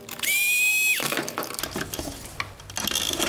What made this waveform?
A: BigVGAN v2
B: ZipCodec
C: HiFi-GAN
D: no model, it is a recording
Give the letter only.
D